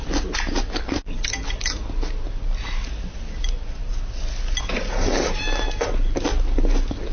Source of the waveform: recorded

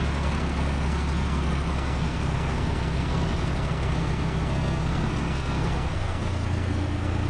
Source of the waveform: remade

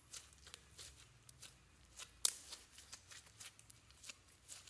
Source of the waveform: recorded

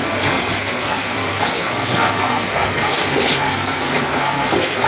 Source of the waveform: remade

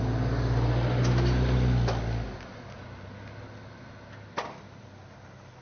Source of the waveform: recorded